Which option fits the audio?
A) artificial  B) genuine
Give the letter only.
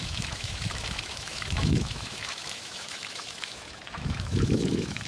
A